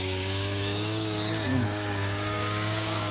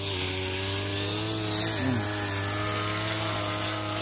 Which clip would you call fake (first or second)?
first